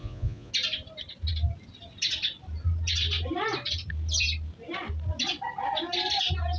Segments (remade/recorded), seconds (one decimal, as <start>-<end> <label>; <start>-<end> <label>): 0.0-0.5 remade; 0.5-6.6 recorded

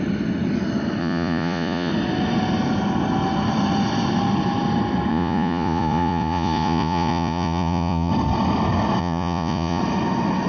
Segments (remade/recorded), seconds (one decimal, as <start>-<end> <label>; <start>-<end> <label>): 0.0-1.0 recorded; 1.0-1.9 remade; 1.9-5.1 recorded; 5.1-8.1 remade; 8.1-9.0 recorded; 9.0-9.8 remade; 9.8-10.5 recorded

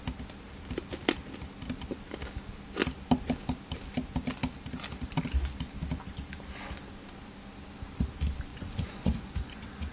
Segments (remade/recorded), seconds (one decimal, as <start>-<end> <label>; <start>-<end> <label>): 0.0-8.5 recorded; 8.5-9.9 remade

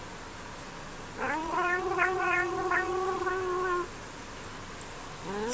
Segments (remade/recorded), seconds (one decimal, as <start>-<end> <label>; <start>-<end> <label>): 0.0-1.4 recorded; 1.4-3.3 remade; 3.3-5.5 recorded

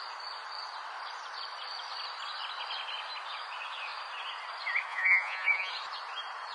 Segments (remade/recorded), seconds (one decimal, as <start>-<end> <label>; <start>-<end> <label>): 0.0-4.9 recorded; 4.9-5.7 remade; 5.7-6.5 recorded

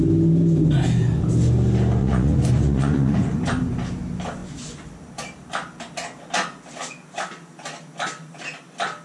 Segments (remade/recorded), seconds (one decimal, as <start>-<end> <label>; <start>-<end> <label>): 0.0-2.0 recorded; 2.0-3.4 remade; 3.4-9.0 recorded

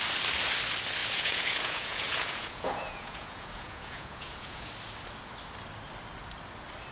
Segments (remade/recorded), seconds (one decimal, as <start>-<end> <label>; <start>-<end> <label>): 0.0-1.0 recorded; 1.0-4.7 remade; 4.7-6.9 recorded

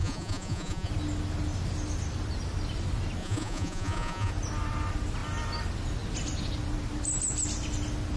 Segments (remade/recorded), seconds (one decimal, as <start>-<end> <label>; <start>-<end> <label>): 0.0-0.9 remade; 0.9-3.2 recorded; 3.2-4.3 remade; 4.3-8.2 recorded